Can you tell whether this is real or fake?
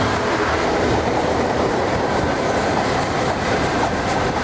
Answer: fake